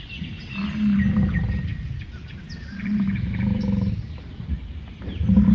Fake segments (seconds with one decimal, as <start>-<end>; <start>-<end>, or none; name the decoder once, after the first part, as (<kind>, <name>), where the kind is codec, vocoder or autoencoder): 0.0-0.6 (vocoder, BigVGAN v2); 1.2-5.5